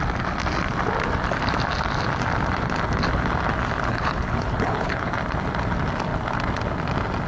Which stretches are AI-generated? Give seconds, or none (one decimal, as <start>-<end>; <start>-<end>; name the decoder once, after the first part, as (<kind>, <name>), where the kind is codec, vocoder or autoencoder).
3.9-5.1 (codec, HILCodec)